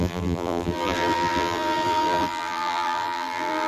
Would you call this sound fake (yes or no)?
yes